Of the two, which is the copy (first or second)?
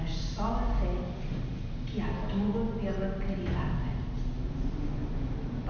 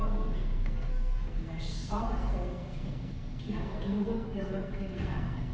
second